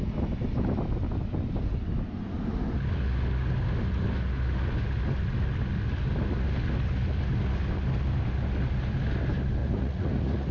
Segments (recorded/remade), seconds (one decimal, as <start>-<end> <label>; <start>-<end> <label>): 0.0-9.6 recorded; 9.6-10.5 remade

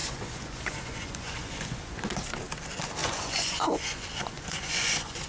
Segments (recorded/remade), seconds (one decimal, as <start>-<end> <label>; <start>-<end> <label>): 0.0-2.1 remade; 2.1-3.0 recorded; 3.0-5.3 remade

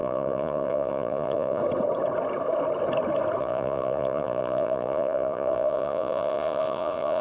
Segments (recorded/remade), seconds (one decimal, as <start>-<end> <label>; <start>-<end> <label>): 0.0-1.6 remade; 1.6-3.4 recorded; 3.4-7.2 remade

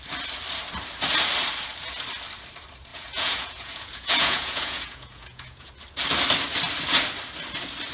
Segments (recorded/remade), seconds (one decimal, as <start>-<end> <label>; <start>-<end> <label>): 0.0-2.9 recorded; 2.9-5.7 remade; 5.7-7.9 recorded

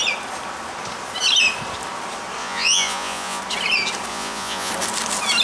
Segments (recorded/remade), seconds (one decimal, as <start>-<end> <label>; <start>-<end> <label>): 0.0-2.4 recorded; 2.4-3.4 remade; 3.4-4.1 recorded; 4.1-4.7 remade; 4.7-5.4 recorded